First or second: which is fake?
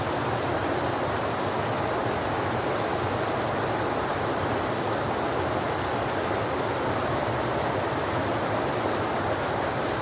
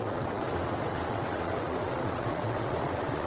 second